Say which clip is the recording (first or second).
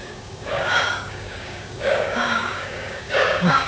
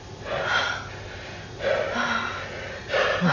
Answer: second